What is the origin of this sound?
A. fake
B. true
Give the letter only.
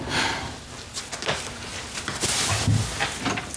B